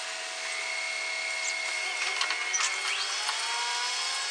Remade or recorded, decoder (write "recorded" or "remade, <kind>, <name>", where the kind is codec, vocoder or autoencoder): recorded